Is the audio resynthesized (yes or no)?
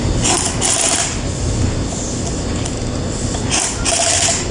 no